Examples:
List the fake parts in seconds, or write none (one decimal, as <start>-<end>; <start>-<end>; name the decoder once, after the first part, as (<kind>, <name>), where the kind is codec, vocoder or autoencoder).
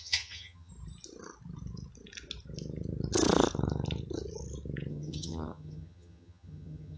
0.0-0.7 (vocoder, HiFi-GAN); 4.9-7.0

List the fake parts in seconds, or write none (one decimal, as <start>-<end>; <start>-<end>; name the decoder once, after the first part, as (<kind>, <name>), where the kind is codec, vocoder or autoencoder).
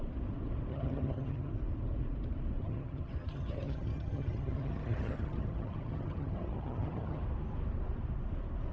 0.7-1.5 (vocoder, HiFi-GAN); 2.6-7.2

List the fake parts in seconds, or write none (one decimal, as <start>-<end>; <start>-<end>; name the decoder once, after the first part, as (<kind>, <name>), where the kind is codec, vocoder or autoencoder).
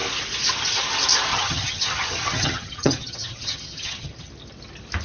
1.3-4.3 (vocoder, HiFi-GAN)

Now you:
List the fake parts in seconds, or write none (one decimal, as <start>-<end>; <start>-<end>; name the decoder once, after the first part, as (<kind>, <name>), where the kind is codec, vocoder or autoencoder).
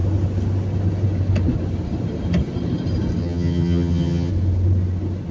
3.2-4.3 (vocoder, HiFi-GAN)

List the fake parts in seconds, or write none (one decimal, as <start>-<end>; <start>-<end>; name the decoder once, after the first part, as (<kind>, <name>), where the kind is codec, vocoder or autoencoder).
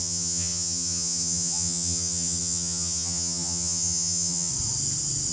0.0-4.5 (vocoder, HiFi-GAN)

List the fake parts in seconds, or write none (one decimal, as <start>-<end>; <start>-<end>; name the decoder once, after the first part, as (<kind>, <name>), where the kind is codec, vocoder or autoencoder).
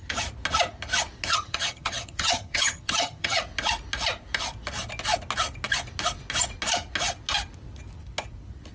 1.3-3.4 (vocoder, HiFi-GAN)